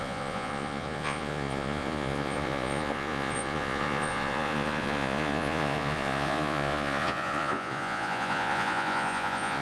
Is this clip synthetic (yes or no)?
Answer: yes